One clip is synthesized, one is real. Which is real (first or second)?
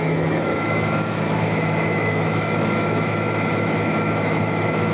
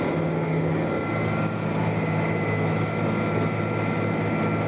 second